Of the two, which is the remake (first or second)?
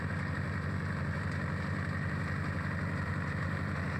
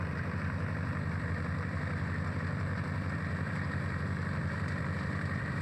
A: second